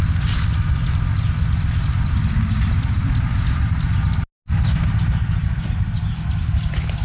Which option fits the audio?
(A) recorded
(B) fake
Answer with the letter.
A